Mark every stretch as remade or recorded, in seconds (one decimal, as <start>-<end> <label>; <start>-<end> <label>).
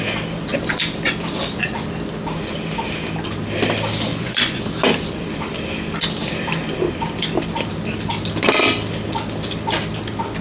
0.0-4.1 recorded; 4.1-4.6 remade; 4.6-10.4 recorded